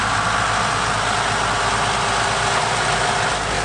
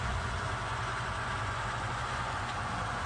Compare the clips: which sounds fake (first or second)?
second